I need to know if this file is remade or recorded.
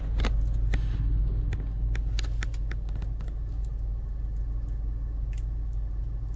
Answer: recorded